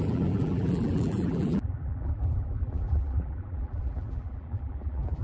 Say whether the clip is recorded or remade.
remade